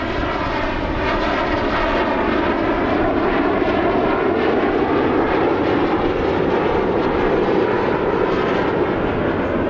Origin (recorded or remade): recorded